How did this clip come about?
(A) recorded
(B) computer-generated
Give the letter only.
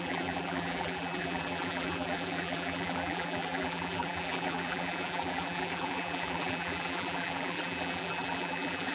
B